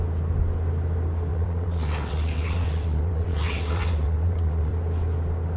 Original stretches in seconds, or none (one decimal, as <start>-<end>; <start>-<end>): 0.0-1.3; 4.7-5.6